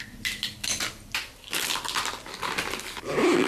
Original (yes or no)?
yes